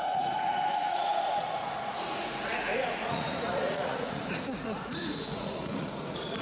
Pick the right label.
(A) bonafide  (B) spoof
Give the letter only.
B